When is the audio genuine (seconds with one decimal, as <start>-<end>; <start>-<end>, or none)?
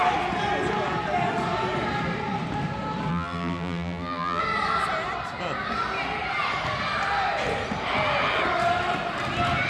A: 0.0-3.1; 4.4-9.7